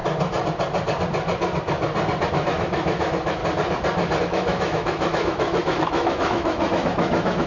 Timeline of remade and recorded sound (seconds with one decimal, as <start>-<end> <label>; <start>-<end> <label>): 0.0-2.3 recorded; 2.3-3.4 remade; 3.4-4.2 recorded; 4.2-7.5 remade